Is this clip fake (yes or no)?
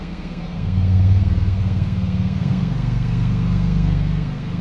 yes